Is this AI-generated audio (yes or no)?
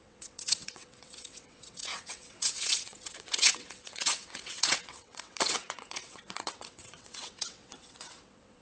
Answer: yes